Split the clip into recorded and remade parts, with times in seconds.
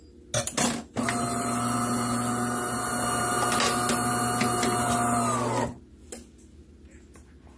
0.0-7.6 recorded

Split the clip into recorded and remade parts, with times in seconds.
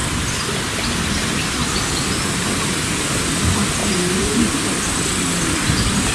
0.0-3.8 recorded; 3.8-4.8 remade; 4.8-6.1 recorded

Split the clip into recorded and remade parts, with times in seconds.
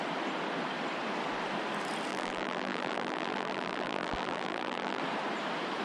0.0-2.1 recorded; 2.1-5.0 remade; 5.0-5.8 recorded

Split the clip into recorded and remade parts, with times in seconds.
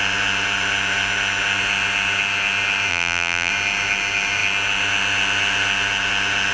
0.0-2.9 recorded; 2.9-3.5 remade; 3.5-6.5 recorded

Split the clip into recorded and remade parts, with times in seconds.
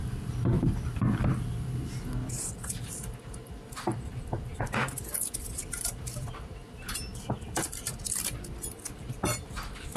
0.0-10.0 remade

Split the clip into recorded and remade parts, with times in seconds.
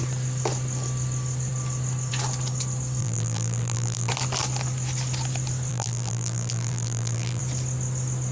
0.0-3.0 recorded; 3.0-4.1 remade; 4.1-5.7 recorded; 5.7-7.4 remade; 7.4-8.3 recorded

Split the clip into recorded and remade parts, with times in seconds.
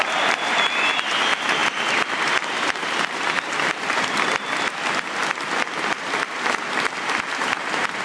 0.0-1.6 remade; 1.6-3.5 recorded; 3.5-8.0 remade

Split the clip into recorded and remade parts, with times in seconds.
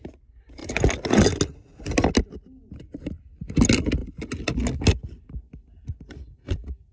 0.0-6.9 recorded